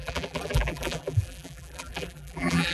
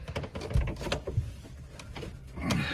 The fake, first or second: first